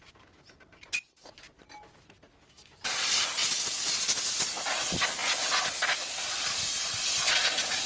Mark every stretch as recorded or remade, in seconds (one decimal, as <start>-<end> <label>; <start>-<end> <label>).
0.0-7.9 recorded